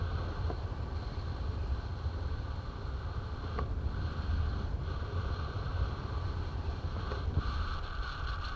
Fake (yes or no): no